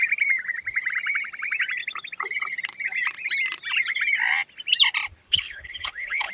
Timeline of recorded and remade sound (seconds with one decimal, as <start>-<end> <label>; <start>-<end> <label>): 0.0-5.2 recorded; 5.2-6.3 remade